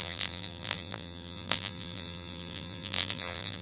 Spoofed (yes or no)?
yes